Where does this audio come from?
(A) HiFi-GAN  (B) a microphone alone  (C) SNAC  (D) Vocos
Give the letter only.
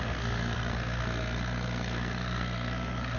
C